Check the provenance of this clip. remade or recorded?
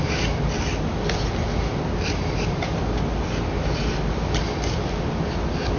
recorded